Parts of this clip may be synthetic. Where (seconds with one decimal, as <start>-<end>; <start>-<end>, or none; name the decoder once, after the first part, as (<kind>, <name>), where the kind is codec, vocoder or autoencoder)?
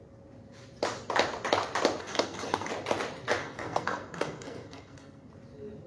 2.0-2.7 (codec, SNAC); 3.4-5.3